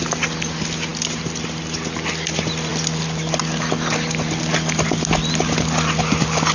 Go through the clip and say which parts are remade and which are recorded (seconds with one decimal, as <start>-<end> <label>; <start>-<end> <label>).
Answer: 0.0-6.5 recorded